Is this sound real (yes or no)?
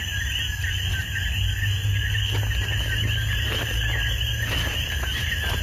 yes